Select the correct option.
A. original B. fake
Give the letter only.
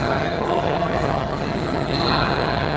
B